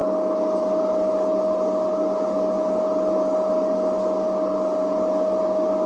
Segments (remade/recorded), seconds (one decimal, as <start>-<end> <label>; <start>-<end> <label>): 0.0-5.9 recorded